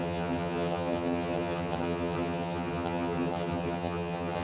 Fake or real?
fake